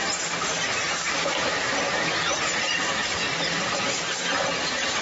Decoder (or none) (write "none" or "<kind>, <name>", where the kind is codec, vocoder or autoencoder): none